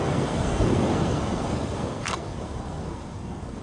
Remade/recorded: remade